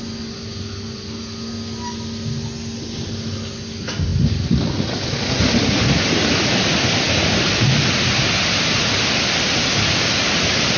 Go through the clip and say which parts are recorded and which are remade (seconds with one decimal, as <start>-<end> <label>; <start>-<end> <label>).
0.0-10.8 recorded